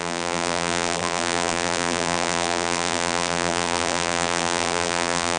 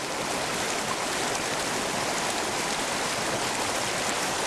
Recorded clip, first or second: second